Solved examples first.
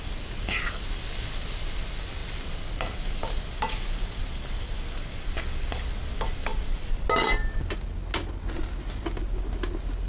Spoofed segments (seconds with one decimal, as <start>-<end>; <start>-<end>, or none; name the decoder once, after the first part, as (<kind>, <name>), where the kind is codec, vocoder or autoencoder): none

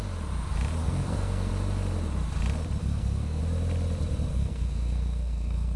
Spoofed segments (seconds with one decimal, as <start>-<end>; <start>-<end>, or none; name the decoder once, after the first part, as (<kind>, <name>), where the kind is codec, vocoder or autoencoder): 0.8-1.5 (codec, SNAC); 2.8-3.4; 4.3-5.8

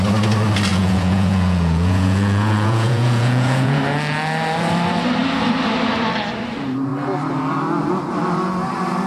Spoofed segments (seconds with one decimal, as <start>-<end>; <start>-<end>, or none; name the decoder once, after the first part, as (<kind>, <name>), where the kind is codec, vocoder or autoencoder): 0.7-3.8 (vocoder, Vocos)